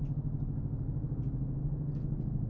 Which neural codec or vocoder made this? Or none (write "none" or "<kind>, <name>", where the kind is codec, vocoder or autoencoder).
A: none